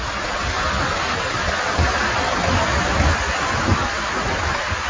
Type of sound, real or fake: real